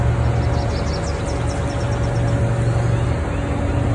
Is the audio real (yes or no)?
yes